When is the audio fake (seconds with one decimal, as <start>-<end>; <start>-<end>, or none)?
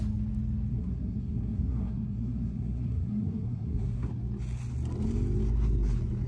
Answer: 0.7-4.1